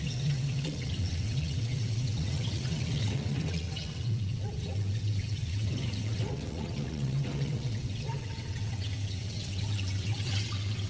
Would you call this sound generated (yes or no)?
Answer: yes